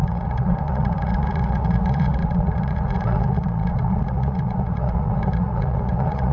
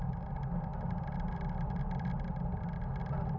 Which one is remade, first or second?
first